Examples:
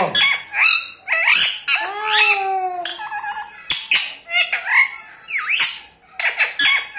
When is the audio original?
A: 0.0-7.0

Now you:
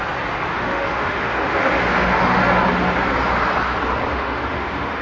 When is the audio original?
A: 0.0-0.5; 2.4-4.1

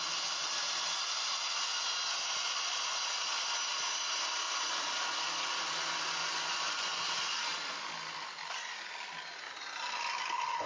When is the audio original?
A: 0.0-6.2; 7.0-10.7

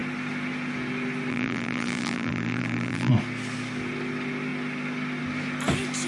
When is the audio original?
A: 0.0-1.3; 3.1-6.1

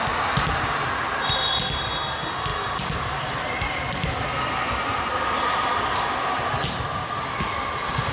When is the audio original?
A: 0.0-8.1

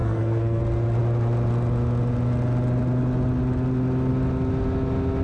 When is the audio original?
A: 0.6-5.2

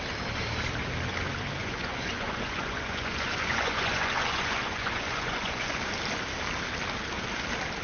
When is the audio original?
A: 0.0-1.6; 5.8-7.8

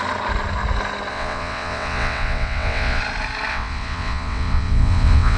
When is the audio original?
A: 0.0-1.1; 3.0-3.5